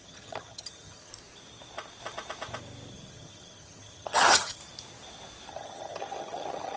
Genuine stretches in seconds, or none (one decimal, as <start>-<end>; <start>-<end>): 1.1-2.9; 4.6-5.5